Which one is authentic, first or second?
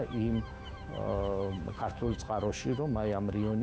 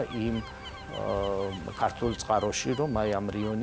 second